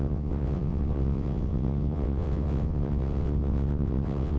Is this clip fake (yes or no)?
yes